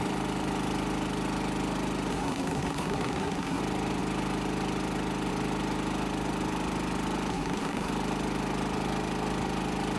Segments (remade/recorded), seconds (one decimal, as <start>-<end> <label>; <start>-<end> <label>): 0.0-2.1 recorded; 2.1-3.6 remade; 3.6-7.3 recorded; 7.3-7.9 remade; 7.9-10.0 recorded